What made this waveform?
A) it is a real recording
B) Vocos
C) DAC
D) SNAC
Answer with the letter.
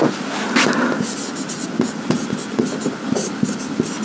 A